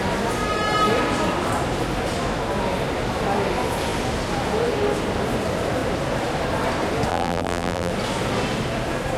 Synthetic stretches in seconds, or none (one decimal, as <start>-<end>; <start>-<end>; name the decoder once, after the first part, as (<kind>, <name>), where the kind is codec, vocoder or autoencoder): 7.1-7.9 (vocoder, BigVGAN v2)